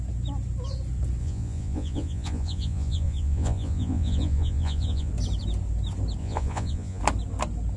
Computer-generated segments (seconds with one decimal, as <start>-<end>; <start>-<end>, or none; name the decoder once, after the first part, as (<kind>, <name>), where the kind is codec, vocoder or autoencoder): 1.2-5.1 (vocoder, Vocos); 6.2-7.0